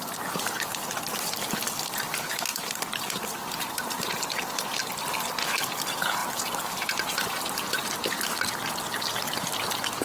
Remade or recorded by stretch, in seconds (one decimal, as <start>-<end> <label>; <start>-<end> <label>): 0.0-2.5 recorded; 2.5-5.0 remade; 5.0-6.2 recorded; 6.2-7.4 remade; 7.4-10.0 recorded